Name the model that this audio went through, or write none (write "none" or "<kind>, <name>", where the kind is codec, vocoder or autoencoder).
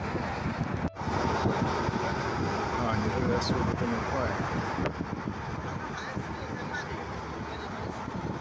none